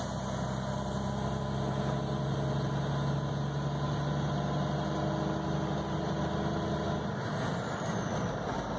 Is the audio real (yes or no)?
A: yes